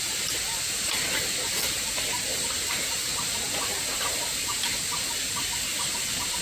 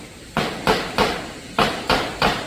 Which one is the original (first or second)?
first